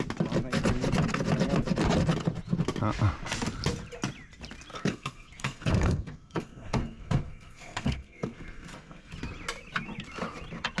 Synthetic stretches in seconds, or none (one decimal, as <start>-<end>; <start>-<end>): 4.7-9.1